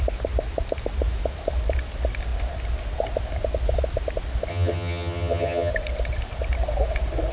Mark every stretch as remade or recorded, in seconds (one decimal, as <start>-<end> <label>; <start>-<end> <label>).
0.0-4.5 recorded; 4.5-5.7 remade; 5.7-7.3 recorded